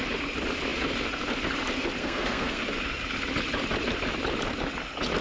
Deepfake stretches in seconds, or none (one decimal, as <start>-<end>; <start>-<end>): 2.0-2.6